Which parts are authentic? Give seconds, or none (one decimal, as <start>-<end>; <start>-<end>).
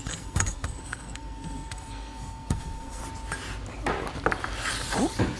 3.0-5.4